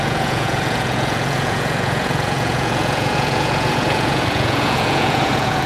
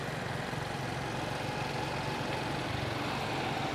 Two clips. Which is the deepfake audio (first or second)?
first